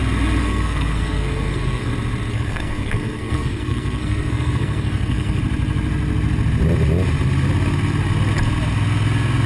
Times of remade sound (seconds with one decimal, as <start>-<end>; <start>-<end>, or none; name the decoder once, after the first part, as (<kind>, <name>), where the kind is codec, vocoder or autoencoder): 0.4-1.9 (codec, SNAC); 2.3-5.4